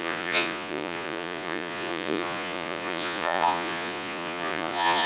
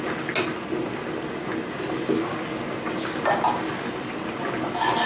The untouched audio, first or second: second